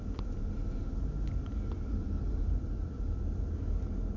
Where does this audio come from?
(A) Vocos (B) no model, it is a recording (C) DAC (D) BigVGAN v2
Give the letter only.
B